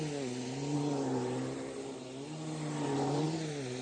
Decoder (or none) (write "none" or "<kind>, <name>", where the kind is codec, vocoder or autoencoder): none